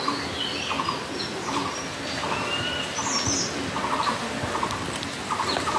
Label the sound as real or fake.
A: real